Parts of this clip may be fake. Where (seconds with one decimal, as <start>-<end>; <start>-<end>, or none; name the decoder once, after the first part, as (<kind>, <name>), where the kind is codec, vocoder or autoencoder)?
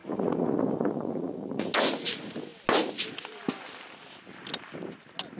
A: 0.0-1.7 (vocoder, Vocos)